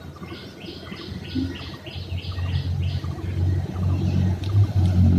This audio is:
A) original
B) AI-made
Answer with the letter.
A